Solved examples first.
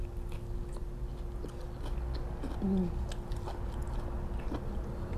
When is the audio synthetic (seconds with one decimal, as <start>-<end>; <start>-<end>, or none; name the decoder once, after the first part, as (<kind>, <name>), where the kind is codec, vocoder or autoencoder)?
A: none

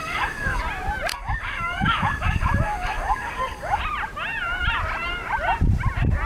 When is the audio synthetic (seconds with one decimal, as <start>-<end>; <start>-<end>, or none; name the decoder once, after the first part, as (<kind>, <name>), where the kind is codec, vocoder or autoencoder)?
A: 0.0-0.6 (codec, DAC); 1.1-3.8

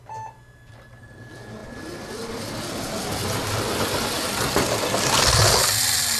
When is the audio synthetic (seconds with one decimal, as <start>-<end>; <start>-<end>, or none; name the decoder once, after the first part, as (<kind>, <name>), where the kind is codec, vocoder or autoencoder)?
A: none

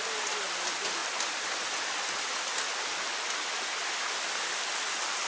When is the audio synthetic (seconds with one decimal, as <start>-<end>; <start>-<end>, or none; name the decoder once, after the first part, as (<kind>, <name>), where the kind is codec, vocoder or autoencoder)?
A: none

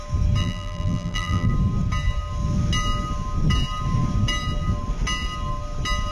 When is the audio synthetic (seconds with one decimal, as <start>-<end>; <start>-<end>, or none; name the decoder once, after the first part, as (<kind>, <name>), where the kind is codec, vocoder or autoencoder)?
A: 0.4-1.5 (vocoder, BigVGAN v2)

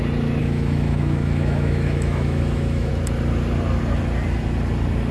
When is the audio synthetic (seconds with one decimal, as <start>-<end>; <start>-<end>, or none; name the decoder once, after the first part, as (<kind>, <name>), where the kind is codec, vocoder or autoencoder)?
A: 0.4-2.9 (autoencoder, DAC-VAE)

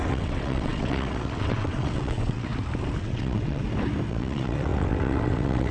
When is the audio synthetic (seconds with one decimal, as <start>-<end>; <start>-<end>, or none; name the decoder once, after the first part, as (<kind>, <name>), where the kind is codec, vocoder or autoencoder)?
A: 0.0-2.5 (vocoder, WaveNeXt); 3.0-3.6; 4.1-5.7

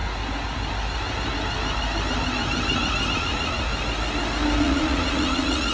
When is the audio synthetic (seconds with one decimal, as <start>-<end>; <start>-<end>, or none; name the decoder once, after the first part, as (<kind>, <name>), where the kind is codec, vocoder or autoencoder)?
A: 3.1-3.7 (vocoder, Vocos); 4.6-5.7